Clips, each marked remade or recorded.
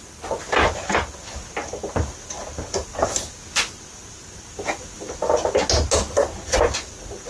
recorded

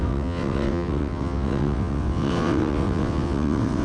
remade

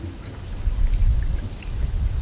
recorded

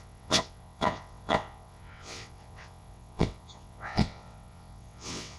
remade